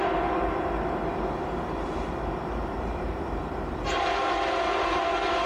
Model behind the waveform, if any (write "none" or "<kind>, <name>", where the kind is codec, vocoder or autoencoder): vocoder, BigVGAN v2